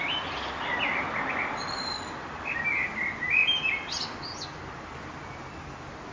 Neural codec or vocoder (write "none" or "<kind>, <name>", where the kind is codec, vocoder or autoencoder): none